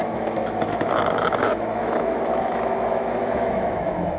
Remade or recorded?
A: remade